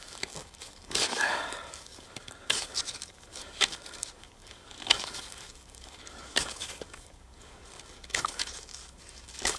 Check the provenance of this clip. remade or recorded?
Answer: remade